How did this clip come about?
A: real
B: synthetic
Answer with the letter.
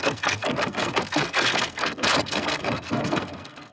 B